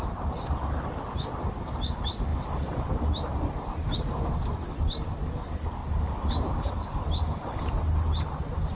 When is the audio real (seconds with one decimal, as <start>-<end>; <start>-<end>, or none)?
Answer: 0.0-2.3; 2.8-5.8; 7.6-8.7